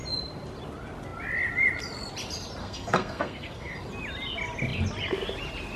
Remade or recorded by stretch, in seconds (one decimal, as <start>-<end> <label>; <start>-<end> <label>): 0.0-2.6 recorded; 2.6-3.7 remade; 3.7-5.8 recorded